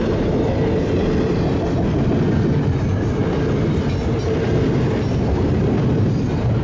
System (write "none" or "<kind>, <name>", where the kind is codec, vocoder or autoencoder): none